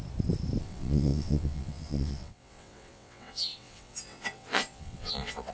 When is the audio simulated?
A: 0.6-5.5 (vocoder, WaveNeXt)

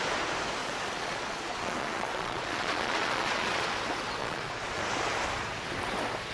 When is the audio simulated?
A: 0.6-3.8 (vocoder, Vocos); 4.2-4.8

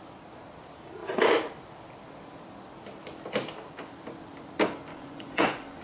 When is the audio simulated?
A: 4.9-5.8 (vocoder, Vocos)

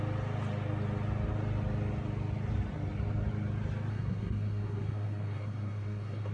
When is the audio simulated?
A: 3.9-6.3 (codec, SNAC)

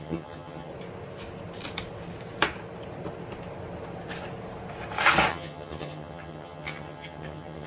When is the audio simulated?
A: 0.0-0.7 (vocoder, HiFi-GAN); 5.3-7.7

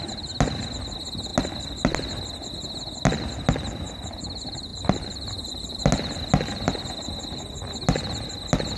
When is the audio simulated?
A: 4.7-5.8 (vocoder, BigVGAN v2)

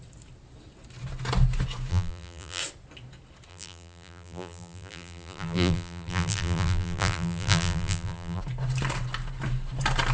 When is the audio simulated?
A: 1.9-2.6 (vocoder, BigVGAN v2); 3.5-8.4

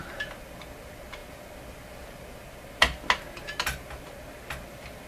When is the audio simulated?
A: none